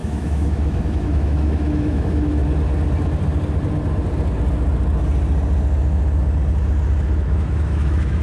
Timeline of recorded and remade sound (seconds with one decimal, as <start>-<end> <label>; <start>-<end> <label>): 0.0-2.4 remade; 2.4-7.2 recorded; 7.2-8.2 remade